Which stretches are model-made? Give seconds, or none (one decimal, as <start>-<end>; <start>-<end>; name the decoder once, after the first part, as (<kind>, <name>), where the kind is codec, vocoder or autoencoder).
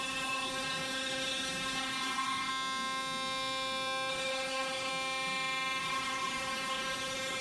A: 0.0-2.5 (codec, HILCodec); 4.1-4.9; 5.8-7.4